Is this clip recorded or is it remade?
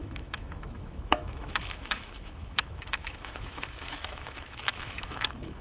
remade